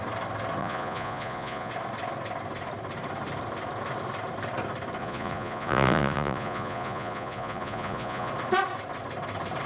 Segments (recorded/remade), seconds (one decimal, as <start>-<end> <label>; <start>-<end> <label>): 0.0-0.6 recorded; 0.6-1.7 remade; 1.7-5.0 recorded; 5.0-8.3 remade; 8.3-9.7 recorded